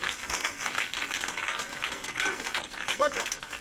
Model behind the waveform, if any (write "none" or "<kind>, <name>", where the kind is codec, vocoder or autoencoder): codec, SNAC